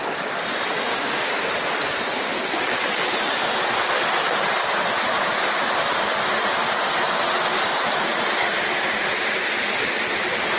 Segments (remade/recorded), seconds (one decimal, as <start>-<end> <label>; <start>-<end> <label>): 0.0-0.9 recorded; 0.9-1.4 remade; 1.4-10.6 recorded